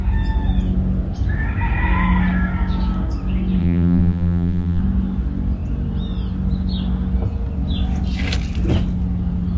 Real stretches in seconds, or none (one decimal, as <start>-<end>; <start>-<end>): 0.0-3.6; 4.8-9.6